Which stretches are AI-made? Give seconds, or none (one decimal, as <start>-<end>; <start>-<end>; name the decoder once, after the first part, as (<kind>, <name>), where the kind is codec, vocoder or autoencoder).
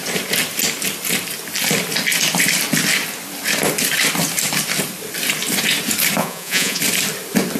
6.2-6.8 (vocoder, Vocos)